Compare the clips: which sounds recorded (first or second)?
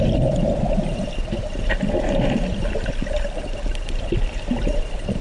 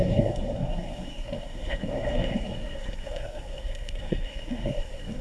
first